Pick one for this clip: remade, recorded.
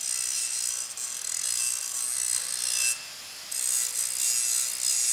recorded